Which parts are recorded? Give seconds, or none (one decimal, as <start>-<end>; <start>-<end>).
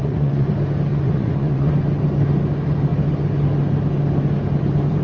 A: 0.5-0.9; 1.7-5.0